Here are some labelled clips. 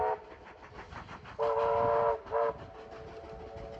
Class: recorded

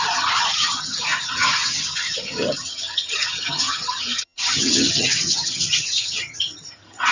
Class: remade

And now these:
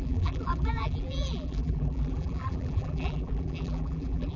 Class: remade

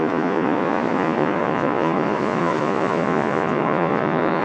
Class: remade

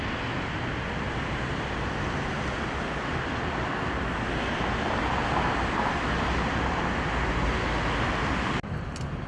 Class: recorded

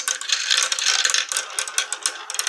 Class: recorded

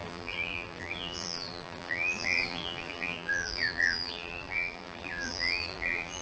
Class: remade